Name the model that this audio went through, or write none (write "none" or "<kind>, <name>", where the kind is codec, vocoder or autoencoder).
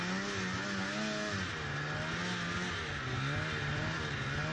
none